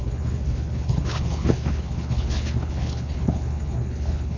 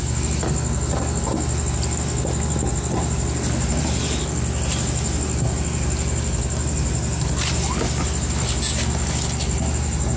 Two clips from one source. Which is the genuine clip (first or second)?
second